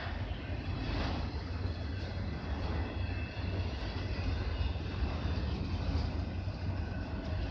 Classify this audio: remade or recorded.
recorded